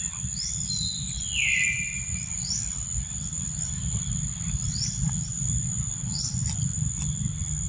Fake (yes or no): no